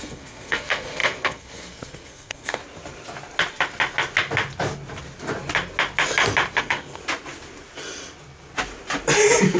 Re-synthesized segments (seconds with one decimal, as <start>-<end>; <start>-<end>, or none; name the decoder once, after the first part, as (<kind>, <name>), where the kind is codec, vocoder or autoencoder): 0.0-2.6 (codec, SNAC); 6.6-7.0